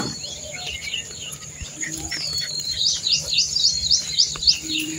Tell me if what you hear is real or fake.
fake